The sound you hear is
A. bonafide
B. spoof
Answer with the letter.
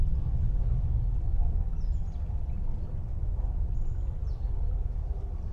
A